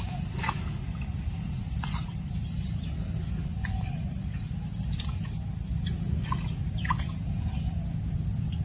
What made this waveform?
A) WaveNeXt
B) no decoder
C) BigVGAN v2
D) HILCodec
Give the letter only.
B